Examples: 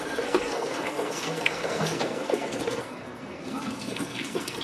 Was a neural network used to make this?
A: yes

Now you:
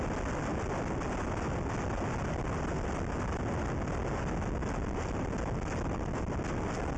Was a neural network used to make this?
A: no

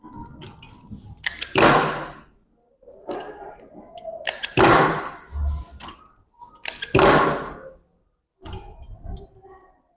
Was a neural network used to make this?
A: no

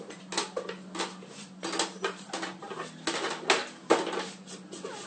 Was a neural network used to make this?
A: no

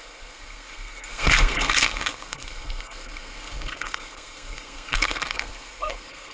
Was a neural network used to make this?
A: yes